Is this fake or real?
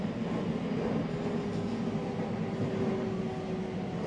real